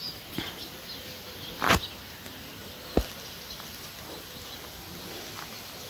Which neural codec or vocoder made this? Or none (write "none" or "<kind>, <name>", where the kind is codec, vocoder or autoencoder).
none